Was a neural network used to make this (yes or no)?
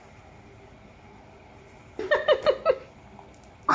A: no